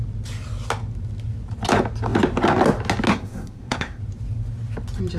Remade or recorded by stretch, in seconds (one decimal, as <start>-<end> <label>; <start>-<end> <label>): 0.0-3.1 recorded; 3.1-4.0 remade; 4.0-5.2 recorded